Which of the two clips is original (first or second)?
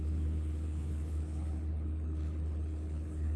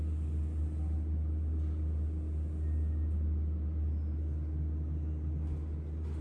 second